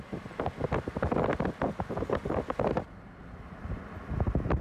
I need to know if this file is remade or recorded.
recorded